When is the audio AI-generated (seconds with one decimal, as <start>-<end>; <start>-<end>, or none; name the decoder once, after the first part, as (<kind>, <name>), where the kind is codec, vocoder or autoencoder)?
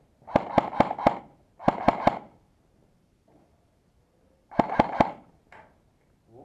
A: 1.6-5.4 (vocoder, BigVGAN v2)